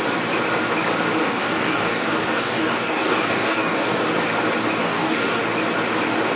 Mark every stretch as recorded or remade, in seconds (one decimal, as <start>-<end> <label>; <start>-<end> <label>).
0.0-1.2 recorded; 1.2-4.1 remade; 4.1-4.8 recorded; 4.8-5.4 remade; 5.4-6.4 recorded